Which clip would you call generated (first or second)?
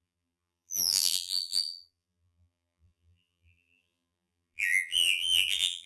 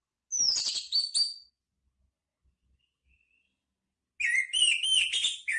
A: first